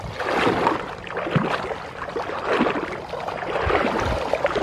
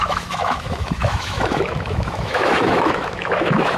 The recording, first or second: first